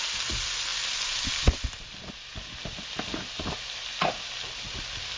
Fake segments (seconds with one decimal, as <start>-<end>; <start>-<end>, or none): none